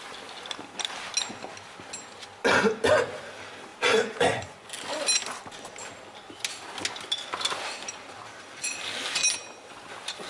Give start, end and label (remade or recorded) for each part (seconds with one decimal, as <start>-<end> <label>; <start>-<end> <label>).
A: 0.0-3.7 recorded; 3.7-4.7 remade; 4.7-10.3 recorded